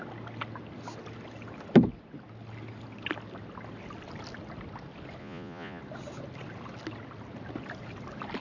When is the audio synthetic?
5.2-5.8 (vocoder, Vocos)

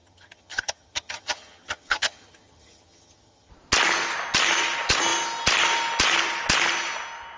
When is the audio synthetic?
0.0-3.5 (vocoder, HiFi-GAN)

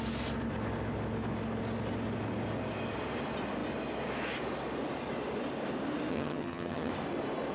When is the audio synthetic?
6.1-6.9 (vocoder, HiFi-GAN)

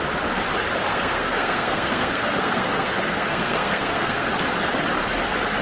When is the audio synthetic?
0.9-4.3 (codec, SNAC)

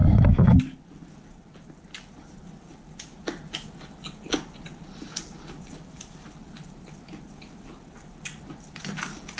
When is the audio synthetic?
0.0-0.6 (vocoder, BigVGAN v2)

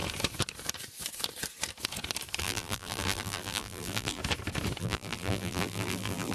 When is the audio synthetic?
2.4-4.2 (vocoder, BigVGAN v2); 4.8-6.3

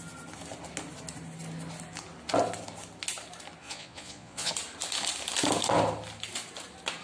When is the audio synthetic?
3.6-4.5 (vocoder, Vocos)

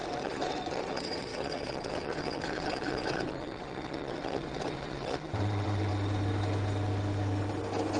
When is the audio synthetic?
0.0-5.9 (vocoder, WaveNeXt)